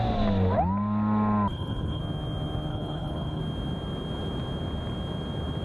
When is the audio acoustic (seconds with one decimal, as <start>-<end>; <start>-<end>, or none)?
0.0-1.5; 2.0-2.7; 3.4-5.6